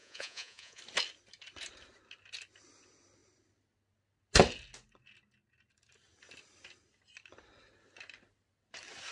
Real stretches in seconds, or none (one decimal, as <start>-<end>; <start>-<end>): 0.8-9.1